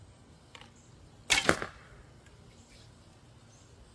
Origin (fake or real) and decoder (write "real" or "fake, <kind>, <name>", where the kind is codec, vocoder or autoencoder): real